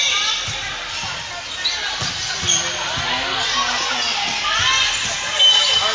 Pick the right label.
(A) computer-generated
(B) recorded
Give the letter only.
B